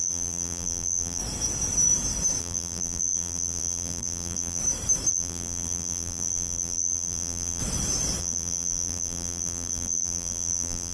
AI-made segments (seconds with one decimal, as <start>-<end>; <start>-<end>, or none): 0.0-1.2; 2.4-4.6; 5.1-7.6; 8.2-10.9